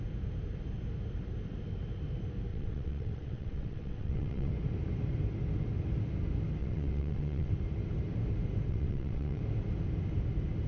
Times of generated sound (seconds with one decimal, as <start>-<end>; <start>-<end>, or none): 2.5-4.5; 6.6-7.5; 8.7-9.4